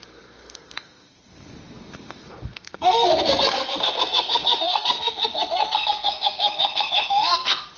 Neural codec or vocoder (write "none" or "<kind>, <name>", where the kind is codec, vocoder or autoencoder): codec, SNAC